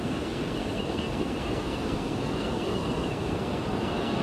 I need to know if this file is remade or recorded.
remade